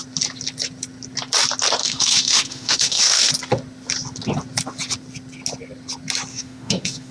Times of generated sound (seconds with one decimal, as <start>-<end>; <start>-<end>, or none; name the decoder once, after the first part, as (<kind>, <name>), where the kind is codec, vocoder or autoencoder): 1.8-3.3 (autoencoder, DAC-VAE); 6.3-7.1